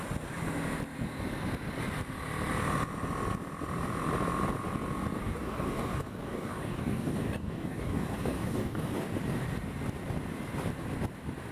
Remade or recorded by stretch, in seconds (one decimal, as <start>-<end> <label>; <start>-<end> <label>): 0.0-5.2 recorded; 5.2-8.9 remade; 8.9-11.5 recorded